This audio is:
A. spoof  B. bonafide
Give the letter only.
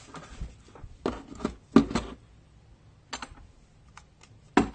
B